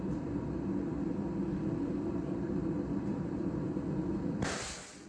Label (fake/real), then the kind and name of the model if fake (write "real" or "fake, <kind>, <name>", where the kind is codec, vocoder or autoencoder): fake, vocoder, BigVGAN v2